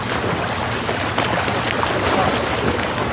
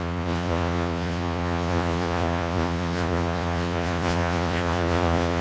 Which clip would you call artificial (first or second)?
second